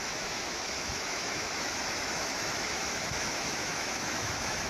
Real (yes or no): no